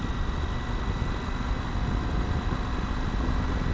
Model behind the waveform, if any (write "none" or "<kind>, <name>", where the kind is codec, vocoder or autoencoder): none